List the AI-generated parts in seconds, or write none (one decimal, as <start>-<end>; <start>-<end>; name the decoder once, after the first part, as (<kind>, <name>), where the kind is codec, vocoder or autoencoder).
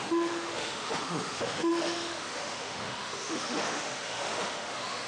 0.0-5.1 (autoencoder, DAC-VAE)